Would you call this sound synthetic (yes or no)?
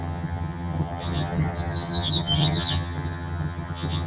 yes